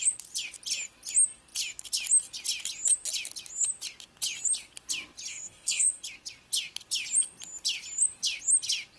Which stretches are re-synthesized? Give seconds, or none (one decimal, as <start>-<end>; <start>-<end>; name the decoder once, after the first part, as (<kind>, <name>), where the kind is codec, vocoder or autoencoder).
5.3-6.0 (codec, SNAC)